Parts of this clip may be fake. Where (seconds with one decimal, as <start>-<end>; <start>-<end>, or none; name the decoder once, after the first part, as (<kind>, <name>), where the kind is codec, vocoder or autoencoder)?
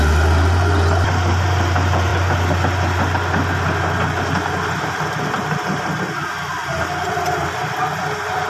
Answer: none